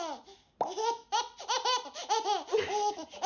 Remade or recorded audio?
recorded